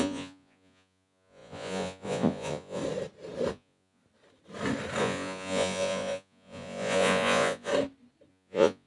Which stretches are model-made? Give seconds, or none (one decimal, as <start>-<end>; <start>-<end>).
0.0-2.8; 3.5-4.0; 5.0-7.7; 8.3-8.9